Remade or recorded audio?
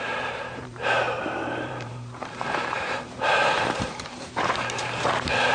remade